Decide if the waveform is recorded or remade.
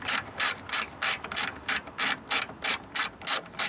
recorded